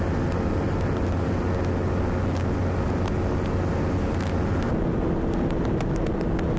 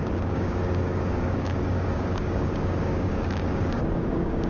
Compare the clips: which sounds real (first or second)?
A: first